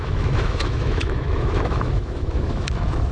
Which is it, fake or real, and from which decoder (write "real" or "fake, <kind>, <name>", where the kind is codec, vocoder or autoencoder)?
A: fake, autoencoder, DAC-VAE